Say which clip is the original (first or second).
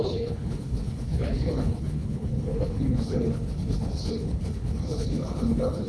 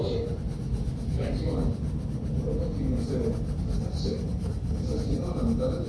second